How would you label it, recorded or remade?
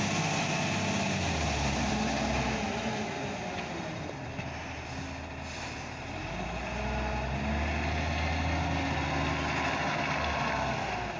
recorded